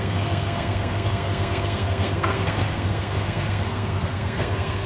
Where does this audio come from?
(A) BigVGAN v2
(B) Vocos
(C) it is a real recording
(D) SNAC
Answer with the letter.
D